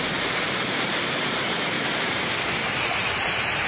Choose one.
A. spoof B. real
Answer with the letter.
A